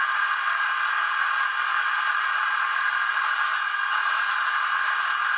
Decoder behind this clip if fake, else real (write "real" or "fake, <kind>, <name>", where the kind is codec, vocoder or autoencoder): real